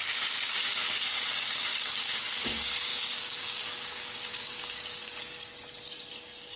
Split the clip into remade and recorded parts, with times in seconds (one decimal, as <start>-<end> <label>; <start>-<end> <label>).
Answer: 0.0-5.5 remade; 5.5-6.1 recorded; 6.1-6.6 remade